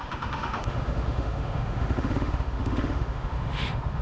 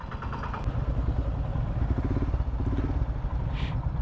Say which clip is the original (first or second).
second